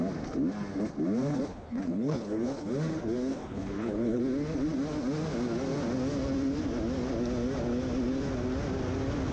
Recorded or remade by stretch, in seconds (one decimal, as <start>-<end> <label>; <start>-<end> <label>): 0.0-1.5 recorded; 1.5-2.7 remade; 2.7-3.3 recorded; 3.3-4.2 remade; 4.2-9.3 recorded